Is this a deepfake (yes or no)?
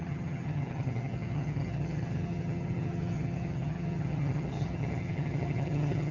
yes